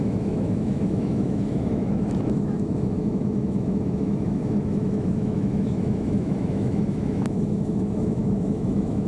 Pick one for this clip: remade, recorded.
remade